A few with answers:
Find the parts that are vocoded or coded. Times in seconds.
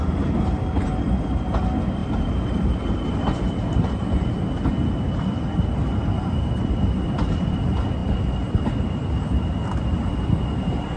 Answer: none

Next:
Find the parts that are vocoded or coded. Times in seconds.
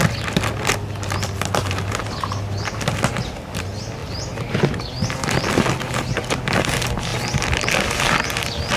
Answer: none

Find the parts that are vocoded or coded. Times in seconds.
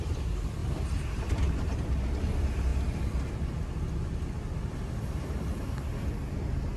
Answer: 0.6-1.9 (vocoder, BigVGAN v2)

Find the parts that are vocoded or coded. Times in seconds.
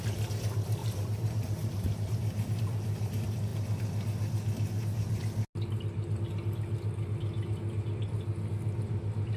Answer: 0.8-2.1 (vocoder, BigVGAN v2)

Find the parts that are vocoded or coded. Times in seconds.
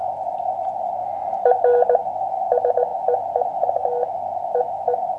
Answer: 1.3-2.4 (vocoder, BigVGAN v2); 2.9-3.8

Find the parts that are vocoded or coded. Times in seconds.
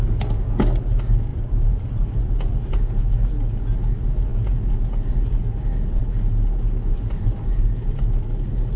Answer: 1.3-3.1 (vocoder, BigVGAN v2); 6.9-8.0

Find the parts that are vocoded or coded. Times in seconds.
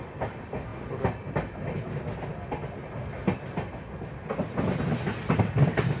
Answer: none